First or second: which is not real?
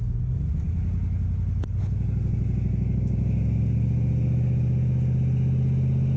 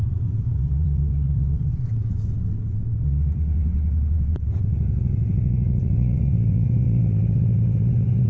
second